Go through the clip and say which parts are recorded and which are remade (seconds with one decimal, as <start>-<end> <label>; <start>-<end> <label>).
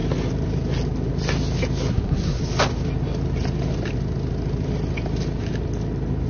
0.0-1.9 recorded; 1.9-2.4 remade; 2.4-6.3 recorded